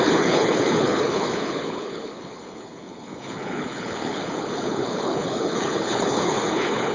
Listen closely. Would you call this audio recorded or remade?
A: remade